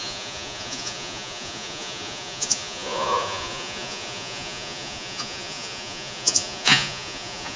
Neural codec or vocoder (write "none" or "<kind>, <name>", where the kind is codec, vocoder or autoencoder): vocoder, Vocos